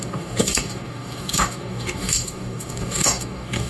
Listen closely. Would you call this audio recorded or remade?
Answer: remade